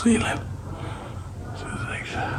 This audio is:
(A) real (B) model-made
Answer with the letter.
A